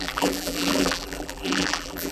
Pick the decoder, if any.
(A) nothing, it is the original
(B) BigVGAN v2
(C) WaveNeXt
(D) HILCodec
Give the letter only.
B